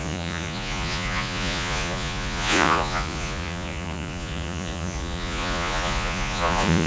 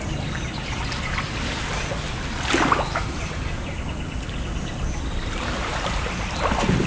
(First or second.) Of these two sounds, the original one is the second